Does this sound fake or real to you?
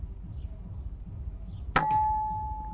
real